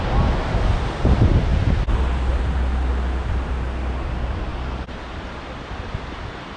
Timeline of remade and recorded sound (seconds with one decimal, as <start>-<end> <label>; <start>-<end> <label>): 0.0-6.6 recorded